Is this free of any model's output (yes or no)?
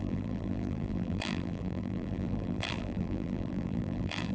no